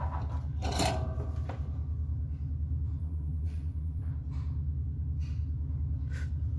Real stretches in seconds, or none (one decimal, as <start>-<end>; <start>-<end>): 0.0-3.0; 4.1-6.6